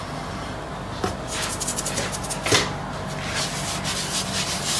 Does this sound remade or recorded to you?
recorded